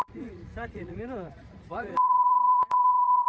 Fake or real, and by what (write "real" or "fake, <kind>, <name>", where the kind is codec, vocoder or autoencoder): fake, vocoder, Vocos